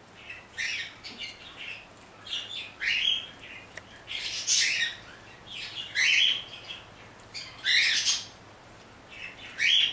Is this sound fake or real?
real